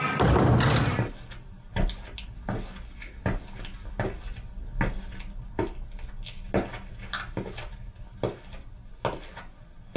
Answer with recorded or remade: recorded